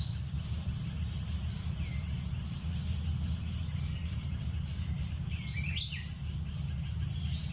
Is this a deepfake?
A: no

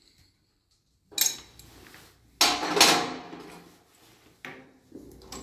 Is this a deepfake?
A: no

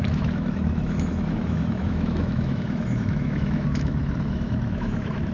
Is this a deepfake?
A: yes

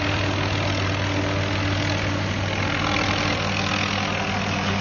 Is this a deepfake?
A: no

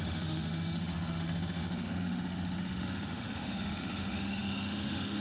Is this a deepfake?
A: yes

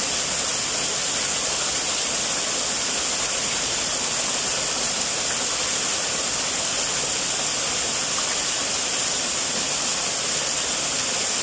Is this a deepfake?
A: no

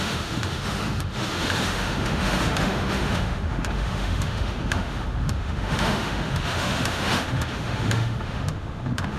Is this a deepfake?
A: yes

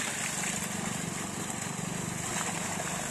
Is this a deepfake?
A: no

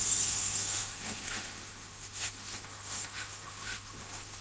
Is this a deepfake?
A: yes